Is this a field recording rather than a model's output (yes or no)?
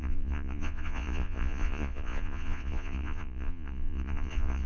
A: no